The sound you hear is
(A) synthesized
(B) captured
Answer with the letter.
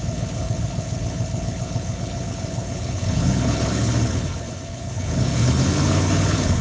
A